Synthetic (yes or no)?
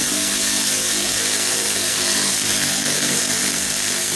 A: yes